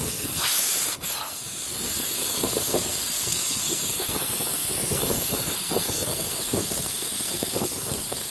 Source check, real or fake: fake